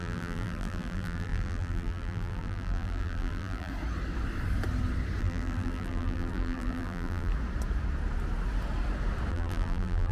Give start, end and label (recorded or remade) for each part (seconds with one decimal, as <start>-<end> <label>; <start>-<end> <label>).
0.0-3.7 remade; 3.7-5.2 recorded; 5.2-7.3 remade; 7.3-9.3 recorded; 9.3-10.1 remade